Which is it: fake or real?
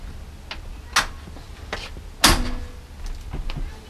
real